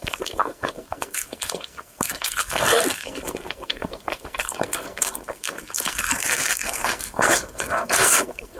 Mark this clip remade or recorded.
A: remade